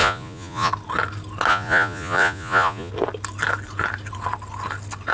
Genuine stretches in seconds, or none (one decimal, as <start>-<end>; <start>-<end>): 0.7-1.5; 2.9-5.1